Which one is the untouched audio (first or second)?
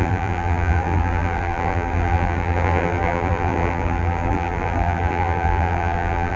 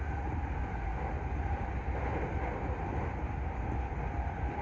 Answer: second